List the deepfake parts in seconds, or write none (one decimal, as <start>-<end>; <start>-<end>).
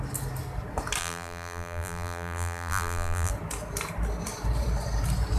1.0-3.3